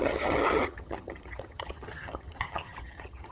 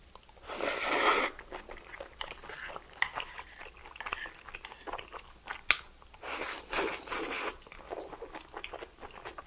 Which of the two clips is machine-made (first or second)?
first